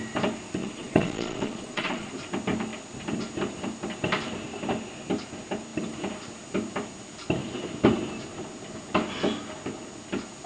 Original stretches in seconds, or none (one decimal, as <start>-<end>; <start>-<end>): 0.0-0.6; 2.1-10.5